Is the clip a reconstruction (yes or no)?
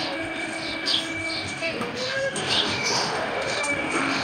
yes